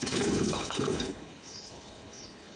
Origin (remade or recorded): remade